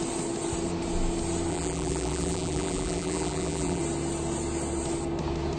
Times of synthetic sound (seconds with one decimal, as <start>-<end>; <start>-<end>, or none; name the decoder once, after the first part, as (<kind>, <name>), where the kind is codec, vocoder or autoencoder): 1.5-3.8 (vocoder, BigVGAN v2)